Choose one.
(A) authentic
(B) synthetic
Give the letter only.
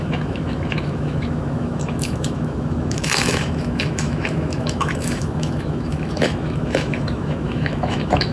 B